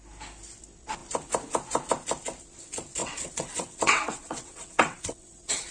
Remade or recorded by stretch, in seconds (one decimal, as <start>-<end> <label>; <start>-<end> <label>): 0.0-3.0 recorded; 3.0-5.7 remade